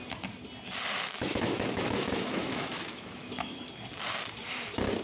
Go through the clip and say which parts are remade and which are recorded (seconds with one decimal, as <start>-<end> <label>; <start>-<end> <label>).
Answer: 0.0-0.9 recorded; 0.9-3.7 remade; 3.7-5.0 recorded